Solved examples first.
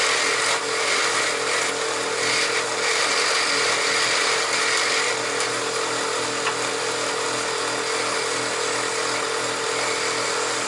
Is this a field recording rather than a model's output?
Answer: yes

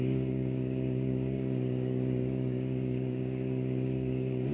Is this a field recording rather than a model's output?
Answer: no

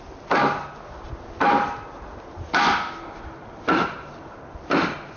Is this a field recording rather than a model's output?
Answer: yes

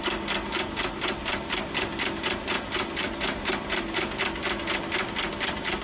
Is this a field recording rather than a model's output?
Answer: yes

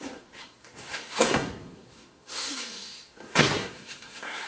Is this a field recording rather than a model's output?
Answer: no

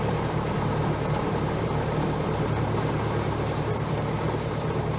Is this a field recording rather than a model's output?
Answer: no